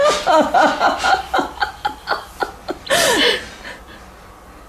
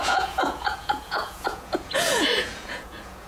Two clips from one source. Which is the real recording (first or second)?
first